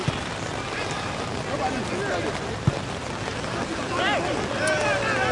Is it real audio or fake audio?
real